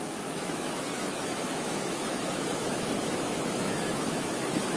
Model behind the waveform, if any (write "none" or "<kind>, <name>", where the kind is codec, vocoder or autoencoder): autoencoder, DAC-VAE